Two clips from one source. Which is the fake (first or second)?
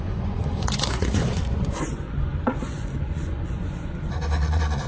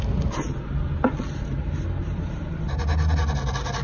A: first